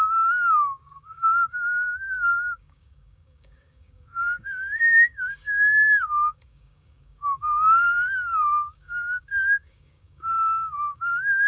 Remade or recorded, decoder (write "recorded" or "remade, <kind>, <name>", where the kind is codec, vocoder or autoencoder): remade, codec, DAC